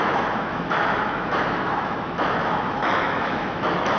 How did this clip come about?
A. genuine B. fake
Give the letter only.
B